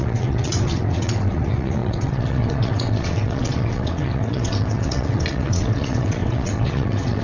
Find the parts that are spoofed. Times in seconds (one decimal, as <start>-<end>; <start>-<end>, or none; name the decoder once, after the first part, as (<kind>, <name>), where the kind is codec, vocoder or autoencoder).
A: 0.0-7.2 (vocoder, WaveNeXt)